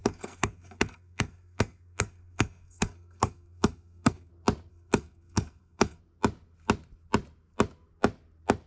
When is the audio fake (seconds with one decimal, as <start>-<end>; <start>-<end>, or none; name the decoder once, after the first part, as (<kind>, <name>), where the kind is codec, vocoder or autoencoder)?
0.0-4.3 (codec, SNAC); 4.7-6.0